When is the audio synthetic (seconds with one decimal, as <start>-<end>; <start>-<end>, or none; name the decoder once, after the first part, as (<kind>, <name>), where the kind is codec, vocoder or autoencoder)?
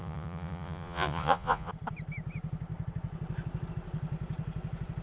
0.0-1.7 (vocoder, Vocos)